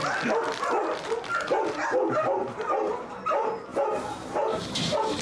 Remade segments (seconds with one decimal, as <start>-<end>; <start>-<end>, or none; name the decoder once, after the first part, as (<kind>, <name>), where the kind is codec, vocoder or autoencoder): none